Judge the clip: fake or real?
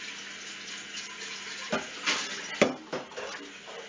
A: real